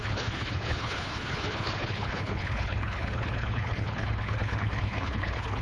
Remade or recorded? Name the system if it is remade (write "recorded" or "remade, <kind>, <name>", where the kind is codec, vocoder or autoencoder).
remade, codec, HILCodec